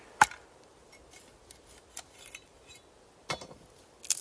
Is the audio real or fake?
real